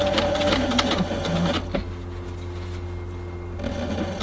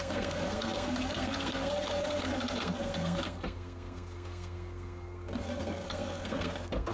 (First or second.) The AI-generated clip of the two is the second